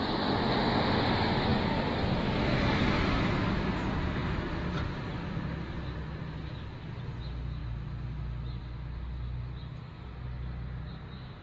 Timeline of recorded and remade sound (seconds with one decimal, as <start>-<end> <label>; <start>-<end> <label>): 0.0-1.5 recorded; 1.5-2.2 remade; 2.2-11.4 recorded